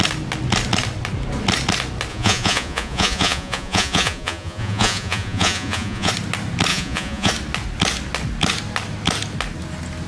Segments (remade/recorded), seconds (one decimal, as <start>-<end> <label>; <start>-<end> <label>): 0.0-2.1 recorded; 2.1-6.1 remade; 6.1-6.7 recorded; 6.7-7.3 remade; 7.3-10.1 recorded